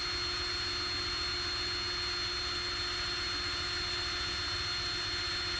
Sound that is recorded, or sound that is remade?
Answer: recorded